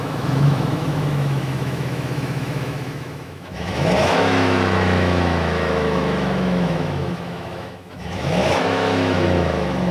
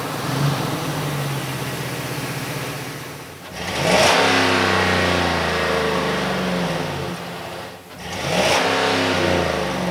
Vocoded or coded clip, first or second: first